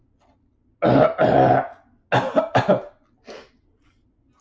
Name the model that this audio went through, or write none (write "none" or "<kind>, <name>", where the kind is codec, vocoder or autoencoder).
none